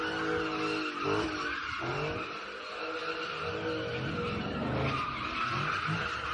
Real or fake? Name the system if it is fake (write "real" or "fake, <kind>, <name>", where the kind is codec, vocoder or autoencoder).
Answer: real